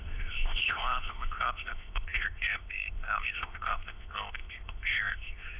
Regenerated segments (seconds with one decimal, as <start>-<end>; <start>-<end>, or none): 0.0-5.6